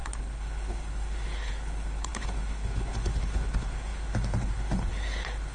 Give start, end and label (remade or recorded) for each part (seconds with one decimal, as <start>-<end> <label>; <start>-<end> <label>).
0.0-5.5 remade